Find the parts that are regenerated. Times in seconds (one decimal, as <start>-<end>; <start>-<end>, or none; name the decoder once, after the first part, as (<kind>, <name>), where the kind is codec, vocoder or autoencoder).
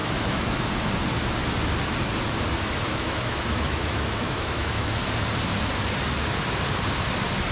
0.0-0.7 (autoencoder, DAC-VAE); 2.9-5.0